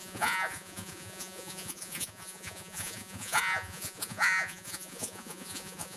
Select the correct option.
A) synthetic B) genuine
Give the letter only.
A